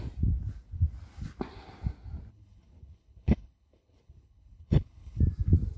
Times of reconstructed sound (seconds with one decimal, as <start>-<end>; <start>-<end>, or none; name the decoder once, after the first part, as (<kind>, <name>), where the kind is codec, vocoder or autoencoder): 2.3-5.2 (codec, HILCodec)